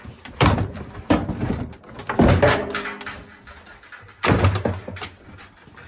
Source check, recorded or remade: recorded